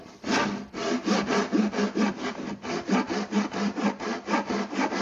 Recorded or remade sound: recorded